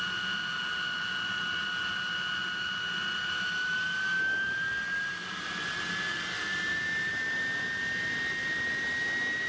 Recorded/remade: recorded